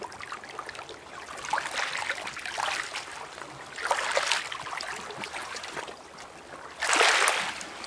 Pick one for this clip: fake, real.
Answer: real